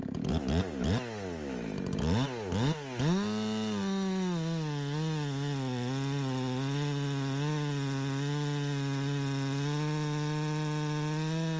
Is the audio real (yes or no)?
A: yes